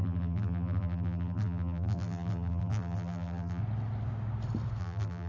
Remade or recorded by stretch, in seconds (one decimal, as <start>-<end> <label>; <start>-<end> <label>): 0.0-3.6 remade; 3.6-4.8 recorded; 4.8-5.3 remade